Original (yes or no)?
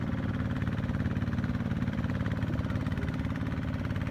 no